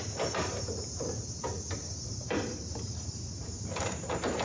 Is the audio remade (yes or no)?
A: yes